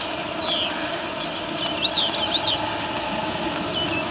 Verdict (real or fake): real